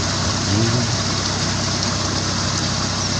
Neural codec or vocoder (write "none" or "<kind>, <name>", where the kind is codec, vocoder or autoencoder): none